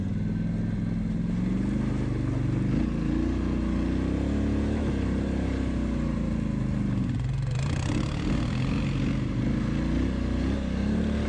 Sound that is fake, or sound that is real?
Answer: real